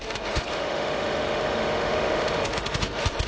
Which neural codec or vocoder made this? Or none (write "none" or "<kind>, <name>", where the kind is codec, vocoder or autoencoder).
autoencoder, DAC-VAE